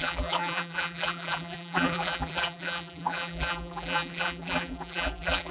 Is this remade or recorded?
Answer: remade